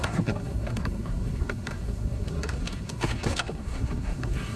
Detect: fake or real fake